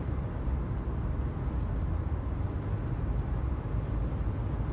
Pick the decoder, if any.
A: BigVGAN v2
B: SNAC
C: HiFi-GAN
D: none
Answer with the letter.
D